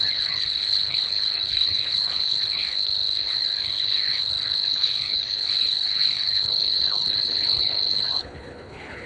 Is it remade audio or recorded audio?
remade